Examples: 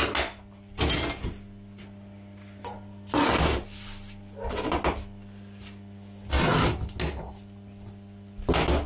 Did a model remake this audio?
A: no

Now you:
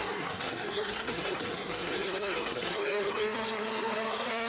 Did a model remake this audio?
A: yes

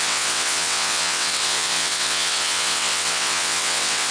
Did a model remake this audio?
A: yes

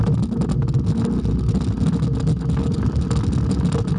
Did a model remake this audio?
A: no